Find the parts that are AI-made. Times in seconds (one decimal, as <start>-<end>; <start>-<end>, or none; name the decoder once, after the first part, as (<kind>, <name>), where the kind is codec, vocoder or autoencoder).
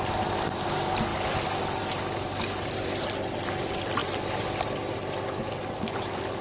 none